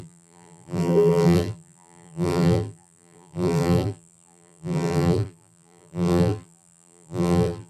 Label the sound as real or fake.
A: fake